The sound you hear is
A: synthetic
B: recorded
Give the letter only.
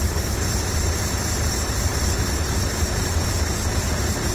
B